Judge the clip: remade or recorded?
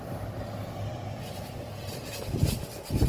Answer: recorded